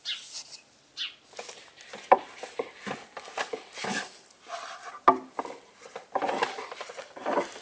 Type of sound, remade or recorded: recorded